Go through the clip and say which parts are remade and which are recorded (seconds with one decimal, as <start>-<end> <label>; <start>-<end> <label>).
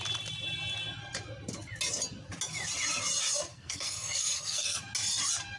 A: 0.0-3.5 recorded; 3.5-4.8 remade; 4.8-5.6 recorded